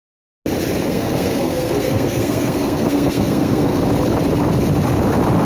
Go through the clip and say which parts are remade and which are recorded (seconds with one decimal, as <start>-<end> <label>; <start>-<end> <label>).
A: 0.0-0.9 recorded; 0.9-3.8 remade; 3.8-5.4 recorded

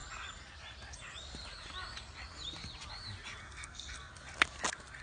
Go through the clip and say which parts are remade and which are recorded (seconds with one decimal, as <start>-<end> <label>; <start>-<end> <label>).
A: 0.0-3.4 recorded; 3.4-4.1 remade; 4.1-5.0 recorded

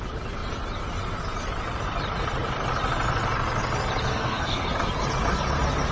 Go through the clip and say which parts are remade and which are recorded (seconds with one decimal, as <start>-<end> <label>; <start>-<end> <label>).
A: 0.0-4.1 recorded; 4.1-4.7 remade; 4.7-5.9 recorded

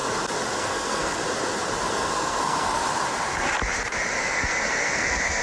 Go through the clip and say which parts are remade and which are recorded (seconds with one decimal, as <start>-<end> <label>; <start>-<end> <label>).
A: 0.0-0.6 recorded; 0.6-1.2 remade; 1.2-1.9 recorded; 1.9-2.8 remade; 2.8-4.2 recorded; 4.2-5.4 remade

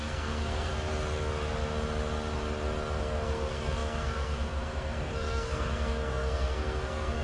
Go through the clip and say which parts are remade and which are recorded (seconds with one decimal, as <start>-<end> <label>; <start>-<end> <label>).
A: 0.0-0.7 remade; 0.7-3.0 recorded; 3.0-7.2 remade

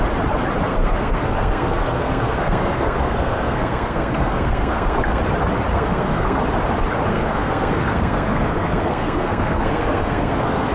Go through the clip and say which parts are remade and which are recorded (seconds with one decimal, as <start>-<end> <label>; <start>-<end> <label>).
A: 0.0-0.7 recorded; 0.7-5.2 remade; 5.2-5.7 recorded; 5.7-6.4 remade; 6.4-7.1 recorded; 7.1-10.7 remade

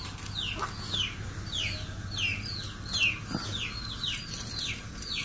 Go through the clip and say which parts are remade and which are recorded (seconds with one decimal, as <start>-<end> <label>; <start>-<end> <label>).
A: 0.0-5.2 recorded

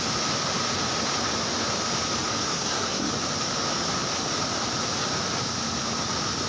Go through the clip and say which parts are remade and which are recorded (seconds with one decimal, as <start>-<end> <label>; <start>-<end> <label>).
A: 0.0-2.4 recorded; 2.4-3.1 remade; 3.1-6.5 recorded